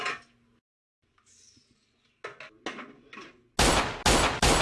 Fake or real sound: real